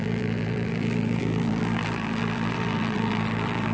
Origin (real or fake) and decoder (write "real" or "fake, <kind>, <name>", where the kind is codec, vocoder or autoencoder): fake, vocoder, BigVGAN v2